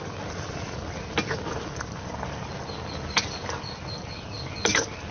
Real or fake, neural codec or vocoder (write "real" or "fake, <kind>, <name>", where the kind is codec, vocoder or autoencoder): real